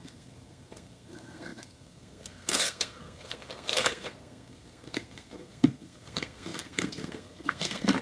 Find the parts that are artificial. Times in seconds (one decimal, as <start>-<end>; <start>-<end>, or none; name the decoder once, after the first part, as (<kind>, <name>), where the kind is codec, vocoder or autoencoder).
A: 0.0-8.0 (codec, SNAC)